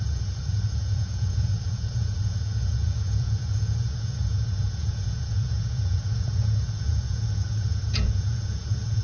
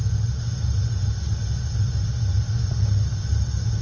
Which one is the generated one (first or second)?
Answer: first